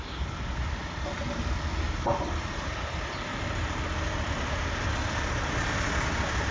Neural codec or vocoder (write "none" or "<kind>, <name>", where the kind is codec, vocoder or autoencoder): none